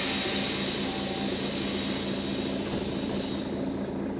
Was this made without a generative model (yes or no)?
yes